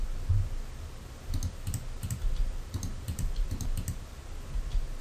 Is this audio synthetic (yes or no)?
no